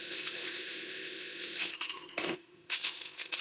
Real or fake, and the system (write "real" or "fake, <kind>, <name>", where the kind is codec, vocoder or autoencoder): fake, codec, ZipCodec